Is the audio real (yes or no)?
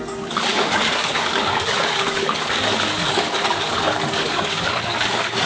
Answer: no